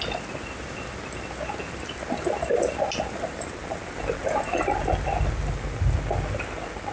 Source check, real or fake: real